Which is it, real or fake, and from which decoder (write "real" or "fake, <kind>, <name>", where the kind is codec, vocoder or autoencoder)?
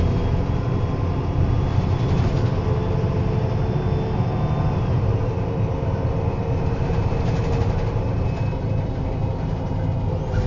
real